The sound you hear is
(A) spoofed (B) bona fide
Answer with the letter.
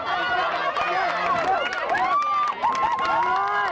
B